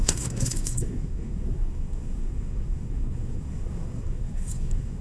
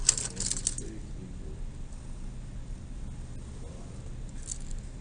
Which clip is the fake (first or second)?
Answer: first